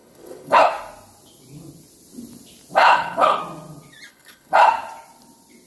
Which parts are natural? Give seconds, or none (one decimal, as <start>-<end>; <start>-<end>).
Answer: 0.7-2.8; 3.4-4.1; 4.7-5.7